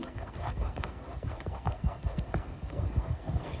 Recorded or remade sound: remade